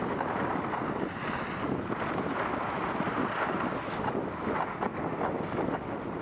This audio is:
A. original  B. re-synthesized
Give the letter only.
A